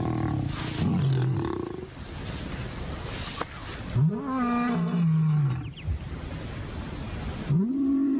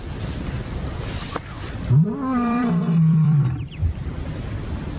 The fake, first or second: second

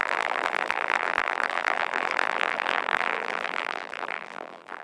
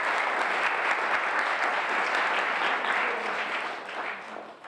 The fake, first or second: first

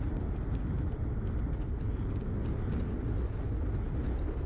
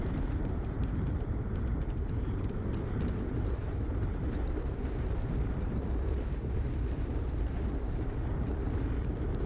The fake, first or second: second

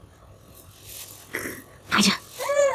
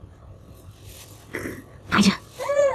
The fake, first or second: second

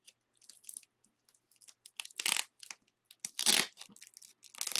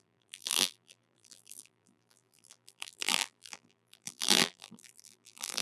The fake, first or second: second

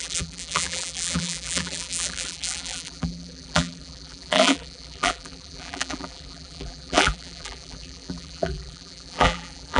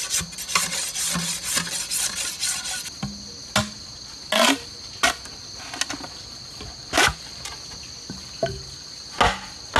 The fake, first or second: first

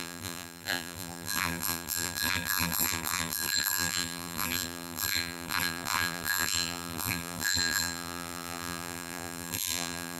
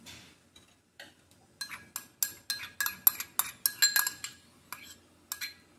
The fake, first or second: first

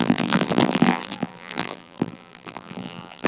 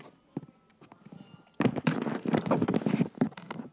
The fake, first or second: first